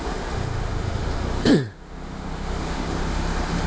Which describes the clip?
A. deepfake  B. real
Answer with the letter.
A